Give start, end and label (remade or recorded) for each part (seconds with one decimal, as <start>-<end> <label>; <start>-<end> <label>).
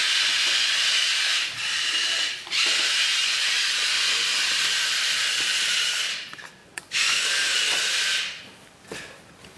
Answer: 0.0-0.7 remade; 0.7-3.2 recorded; 3.2-4.3 remade; 4.3-6.6 recorded; 6.6-7.2 remade; 7.2-9.6 recorded